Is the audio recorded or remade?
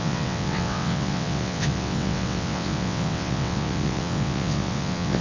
remade